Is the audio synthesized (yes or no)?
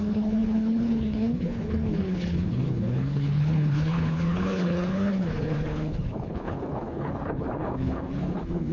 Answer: yes